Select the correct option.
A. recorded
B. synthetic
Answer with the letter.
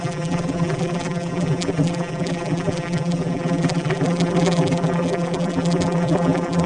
B